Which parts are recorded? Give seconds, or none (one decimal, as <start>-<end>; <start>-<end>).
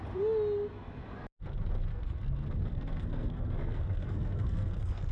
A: 0.0-1.9